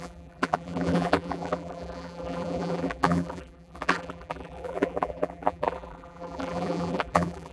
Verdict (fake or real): fake